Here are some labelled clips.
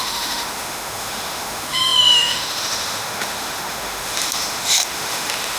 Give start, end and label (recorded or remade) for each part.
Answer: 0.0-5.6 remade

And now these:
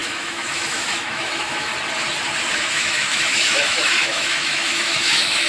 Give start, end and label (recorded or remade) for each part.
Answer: 0.0-1.7 remade; 1.7-2.5 recorded; 2.5-5.5 remade